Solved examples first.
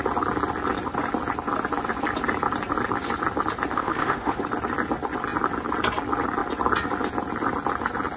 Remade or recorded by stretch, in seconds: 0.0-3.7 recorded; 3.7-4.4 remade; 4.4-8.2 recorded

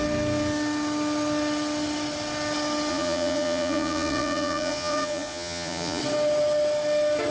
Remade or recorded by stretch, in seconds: 0.0-2.9 recorded; 2.9-6.0 remade; 6.0-7.3 recorded

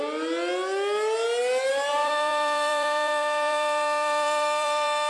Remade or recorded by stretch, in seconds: 0.0-1.9 recorded; 1.9-5.1 remade

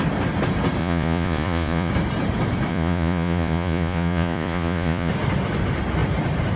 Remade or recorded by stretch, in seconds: 0.0-0.8 recorded; 0.8-1.9 remade; 1.9-2.7 recorded; 2.7-5.1 remade; 5.1-6.6 recorded